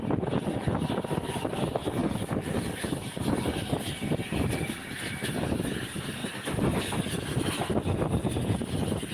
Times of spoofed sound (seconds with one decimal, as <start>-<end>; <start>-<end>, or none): none